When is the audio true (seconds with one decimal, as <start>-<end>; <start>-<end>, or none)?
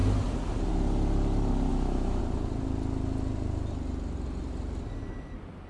0.0-1.7; 2.2-5.7